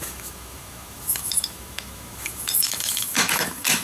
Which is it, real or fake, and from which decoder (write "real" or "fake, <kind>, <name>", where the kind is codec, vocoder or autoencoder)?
fake, autoencoder, DAC-VAE